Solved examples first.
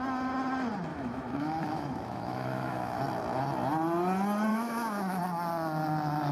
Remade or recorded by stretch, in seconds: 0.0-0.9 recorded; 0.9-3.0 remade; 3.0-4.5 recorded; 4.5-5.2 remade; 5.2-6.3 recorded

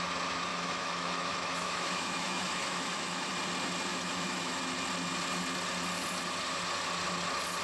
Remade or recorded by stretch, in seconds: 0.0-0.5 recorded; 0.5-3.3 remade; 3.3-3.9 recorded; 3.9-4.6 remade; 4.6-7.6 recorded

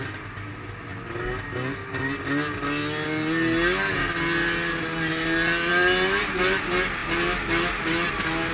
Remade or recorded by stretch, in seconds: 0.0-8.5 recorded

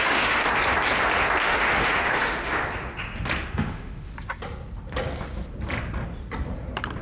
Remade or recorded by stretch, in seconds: 0.0-0.5 remade; 0.5-1.4 recorded; 1.4-2.6 remade; 2.6-3.5 recorded; 3.5-4.1 remade; 4.1-7.0 recorded

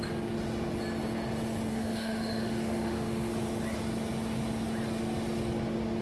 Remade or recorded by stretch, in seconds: 0.0-1.7 recorded; 1.7-3.3 remade; 3.3-6.0 recorded

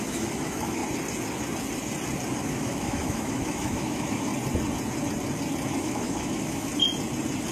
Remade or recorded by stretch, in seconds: 0.0-0.8 remade; 0.8-2.4 recorded; 2.4-4.3 remade; 4.3-5.8 recorded; 5.8-6.7 remade; 6.7-7.5 recorded